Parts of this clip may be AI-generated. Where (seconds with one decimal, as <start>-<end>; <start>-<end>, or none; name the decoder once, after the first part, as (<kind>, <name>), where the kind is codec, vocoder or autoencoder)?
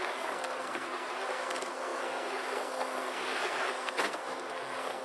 0.0-5.0 (codec, SNAC)